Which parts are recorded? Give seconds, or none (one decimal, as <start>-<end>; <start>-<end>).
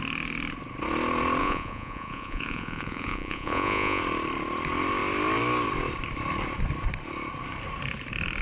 0.0-1.4; 4.0-8.4